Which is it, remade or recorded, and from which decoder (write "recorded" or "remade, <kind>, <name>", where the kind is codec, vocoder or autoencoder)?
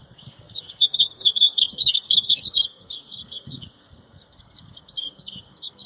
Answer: remade, codec, SNAC